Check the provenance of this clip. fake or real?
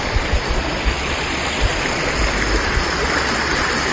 real